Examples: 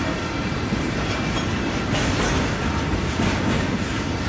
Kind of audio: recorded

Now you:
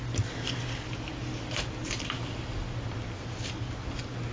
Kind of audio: recorded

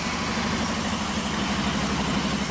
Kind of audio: recorded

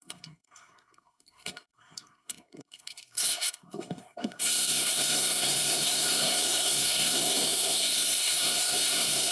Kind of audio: remade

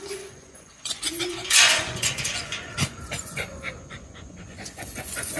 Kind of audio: remade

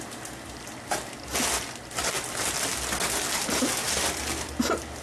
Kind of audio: recorded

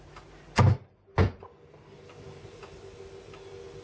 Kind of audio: recorded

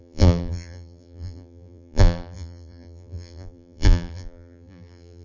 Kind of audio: remade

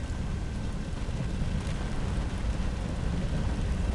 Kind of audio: remade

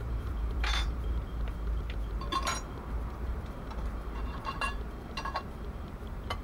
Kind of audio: remade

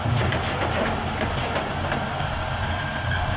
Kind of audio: recorded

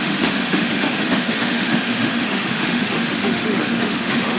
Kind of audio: remade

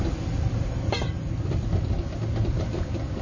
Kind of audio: recorded